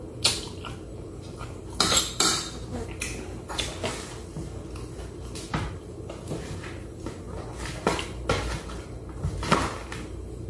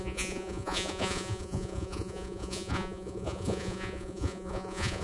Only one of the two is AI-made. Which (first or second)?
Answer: second